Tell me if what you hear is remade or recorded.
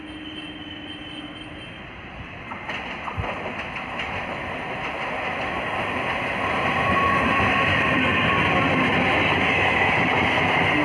recorded